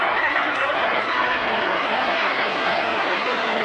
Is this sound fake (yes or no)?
yes